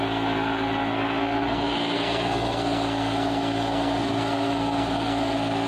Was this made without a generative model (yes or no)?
no